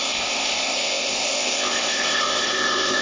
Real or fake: fake